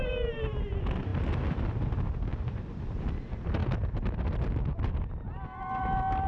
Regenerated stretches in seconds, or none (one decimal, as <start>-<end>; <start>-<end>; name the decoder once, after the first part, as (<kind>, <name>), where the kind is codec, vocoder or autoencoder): none